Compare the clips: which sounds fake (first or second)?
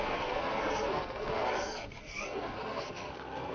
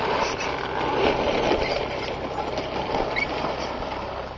first